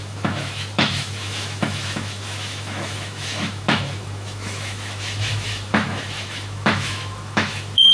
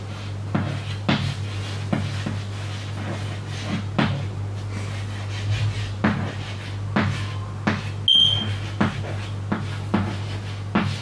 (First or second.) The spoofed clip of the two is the first